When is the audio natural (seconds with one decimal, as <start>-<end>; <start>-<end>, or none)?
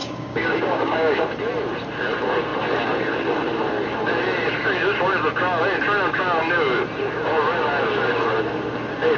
1.2-9.2